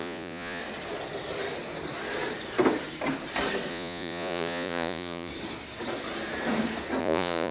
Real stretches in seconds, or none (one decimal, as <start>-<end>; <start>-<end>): 0.6-3.7; 5.3-7.0